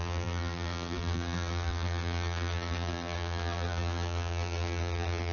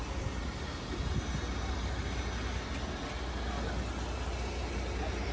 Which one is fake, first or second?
first